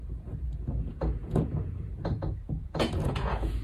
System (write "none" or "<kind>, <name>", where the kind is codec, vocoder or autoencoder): vocoder, Vocos